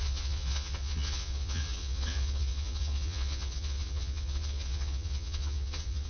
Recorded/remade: remade